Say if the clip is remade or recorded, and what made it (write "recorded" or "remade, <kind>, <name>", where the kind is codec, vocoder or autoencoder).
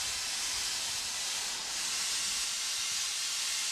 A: recorded